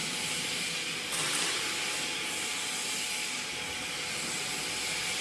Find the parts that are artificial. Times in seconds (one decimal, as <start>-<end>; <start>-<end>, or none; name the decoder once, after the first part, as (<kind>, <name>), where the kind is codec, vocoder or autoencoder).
none